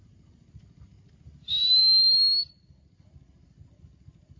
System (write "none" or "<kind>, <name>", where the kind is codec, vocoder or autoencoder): none